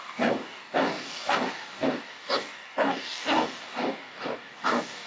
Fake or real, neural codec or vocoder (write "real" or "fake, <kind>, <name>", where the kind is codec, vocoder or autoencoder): fake, codec, DAC